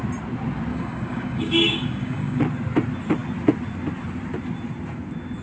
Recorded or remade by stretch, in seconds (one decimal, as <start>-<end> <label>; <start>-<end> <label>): 0.0-0.7 recorded; 0.7-2.4 remade; 2.4-5.4 recorded